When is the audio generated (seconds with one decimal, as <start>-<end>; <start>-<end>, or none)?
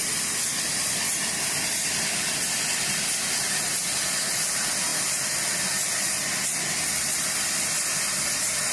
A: none